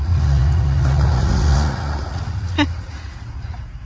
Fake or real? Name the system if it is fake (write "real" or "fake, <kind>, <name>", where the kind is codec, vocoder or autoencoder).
fake, vocoder, Vocos